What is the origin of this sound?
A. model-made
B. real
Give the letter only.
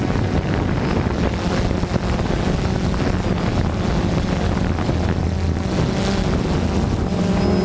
B